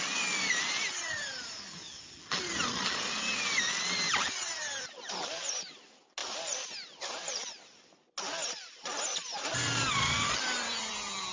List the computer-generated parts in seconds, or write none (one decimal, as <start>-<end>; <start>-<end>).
none